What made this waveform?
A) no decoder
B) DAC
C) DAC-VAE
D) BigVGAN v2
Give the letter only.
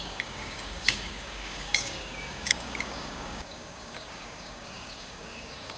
B